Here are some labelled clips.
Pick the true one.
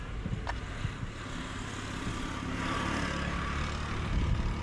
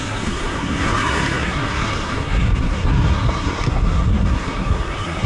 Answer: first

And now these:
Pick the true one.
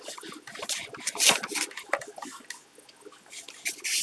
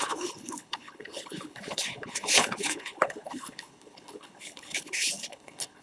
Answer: first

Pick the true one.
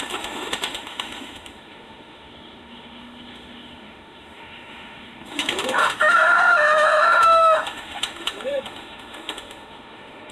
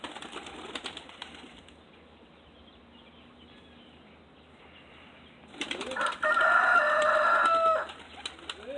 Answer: second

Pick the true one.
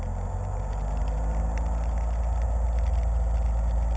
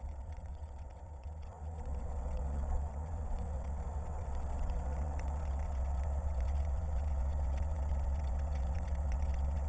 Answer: first